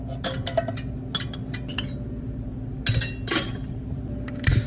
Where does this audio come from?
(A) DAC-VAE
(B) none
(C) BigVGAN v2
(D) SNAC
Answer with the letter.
B